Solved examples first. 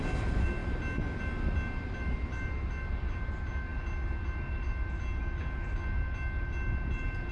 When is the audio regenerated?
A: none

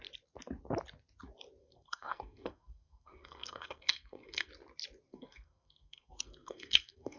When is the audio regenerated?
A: 1.6-4.5 (codec, SNAC); 5.1-7.2

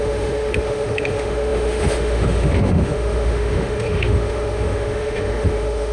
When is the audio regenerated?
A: 0.0-5.9 (autoencoder, DAC-VAE)

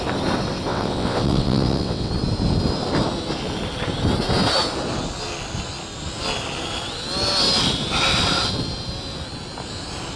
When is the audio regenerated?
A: 0.7-2.1 (vocoder, WaveNeXt)